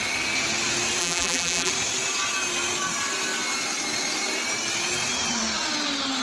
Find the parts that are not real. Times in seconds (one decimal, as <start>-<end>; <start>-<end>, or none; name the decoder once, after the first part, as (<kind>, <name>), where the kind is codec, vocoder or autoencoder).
1.0-1.7 (vocoder, BigVGAN v2)

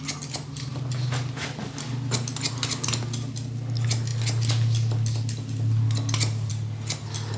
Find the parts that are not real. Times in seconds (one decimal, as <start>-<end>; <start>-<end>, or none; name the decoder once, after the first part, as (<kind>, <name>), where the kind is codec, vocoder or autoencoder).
none

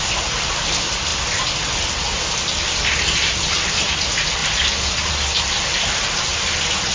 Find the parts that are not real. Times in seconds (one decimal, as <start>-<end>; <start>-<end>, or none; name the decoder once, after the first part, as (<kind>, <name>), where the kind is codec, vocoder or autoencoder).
none

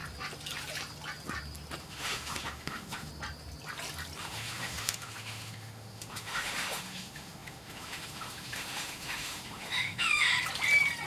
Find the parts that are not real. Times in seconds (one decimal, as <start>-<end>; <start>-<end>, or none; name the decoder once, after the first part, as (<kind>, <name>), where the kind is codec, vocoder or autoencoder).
1.8-3.1 (autoencoder, DAC-VAE); 4.2-10.3